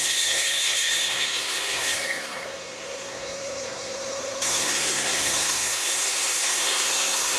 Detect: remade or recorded remade